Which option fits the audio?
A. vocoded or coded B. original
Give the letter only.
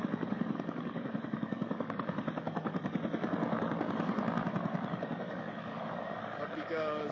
A